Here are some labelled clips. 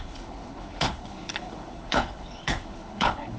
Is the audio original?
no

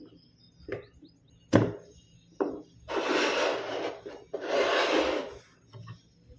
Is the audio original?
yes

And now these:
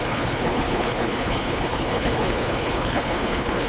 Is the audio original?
no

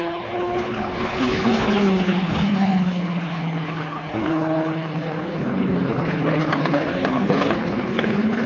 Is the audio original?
no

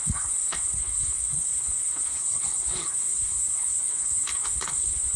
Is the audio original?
no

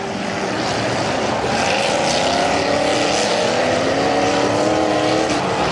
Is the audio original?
yes